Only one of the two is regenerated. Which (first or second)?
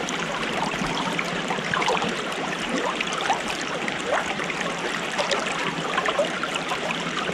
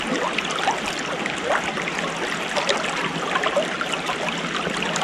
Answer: first